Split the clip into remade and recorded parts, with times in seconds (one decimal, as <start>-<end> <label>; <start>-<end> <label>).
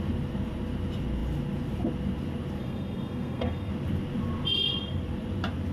0.0-2.6 recorded; 2.6-3.7 remade; 3.7-5.7 recorded